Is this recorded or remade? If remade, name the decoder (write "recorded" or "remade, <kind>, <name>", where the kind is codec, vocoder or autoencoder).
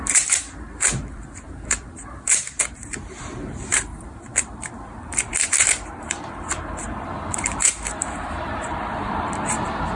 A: remade, vocoder, BigVGAN v2